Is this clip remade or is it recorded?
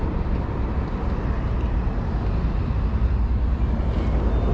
recorded